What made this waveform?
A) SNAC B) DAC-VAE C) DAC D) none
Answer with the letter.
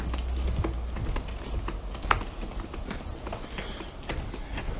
D